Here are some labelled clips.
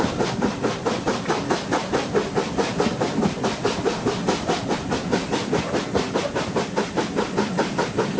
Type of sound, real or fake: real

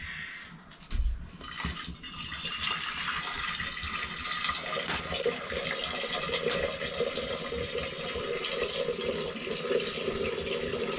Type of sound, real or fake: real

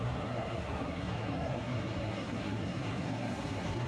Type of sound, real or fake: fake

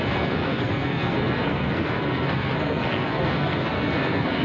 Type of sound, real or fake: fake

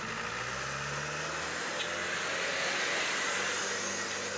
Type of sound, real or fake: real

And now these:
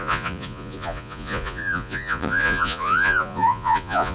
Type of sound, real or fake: fake